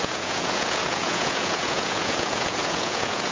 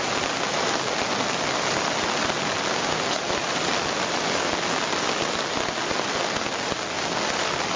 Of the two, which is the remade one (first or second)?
first